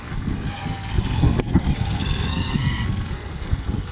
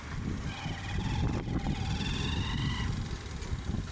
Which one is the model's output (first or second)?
first